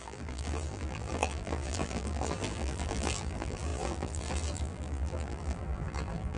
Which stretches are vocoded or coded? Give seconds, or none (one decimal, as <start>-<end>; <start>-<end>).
0.0-6.4

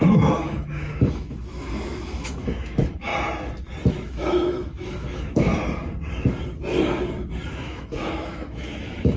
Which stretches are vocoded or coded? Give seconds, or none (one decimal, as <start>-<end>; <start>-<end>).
0.0-3.1; 3.9-5.5; 7.5-9.2